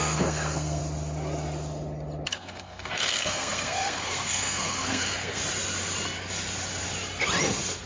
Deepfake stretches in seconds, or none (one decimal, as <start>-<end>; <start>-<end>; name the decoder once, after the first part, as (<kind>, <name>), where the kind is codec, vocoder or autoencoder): 0.0-0.8 (codec, SNAC); 2.3-5.4